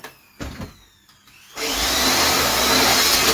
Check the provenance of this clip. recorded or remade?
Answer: recorded